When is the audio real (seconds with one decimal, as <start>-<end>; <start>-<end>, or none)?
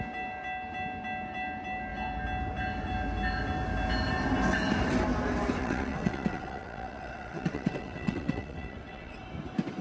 0.0-5.6; 9.2-9.8